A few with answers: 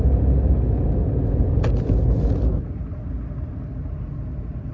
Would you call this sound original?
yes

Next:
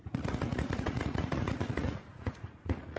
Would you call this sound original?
no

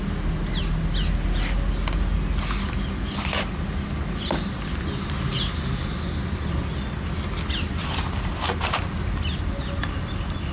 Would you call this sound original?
yes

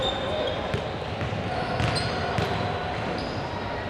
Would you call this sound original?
yes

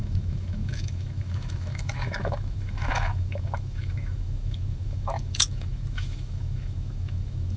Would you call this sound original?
no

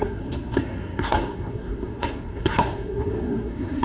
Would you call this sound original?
no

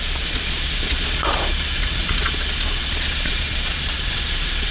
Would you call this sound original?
no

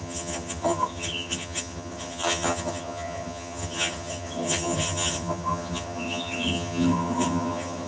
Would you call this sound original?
no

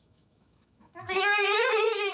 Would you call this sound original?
no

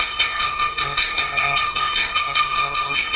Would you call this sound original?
no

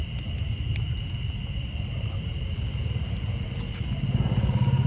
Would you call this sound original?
yes